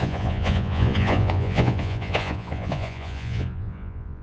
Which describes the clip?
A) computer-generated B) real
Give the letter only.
A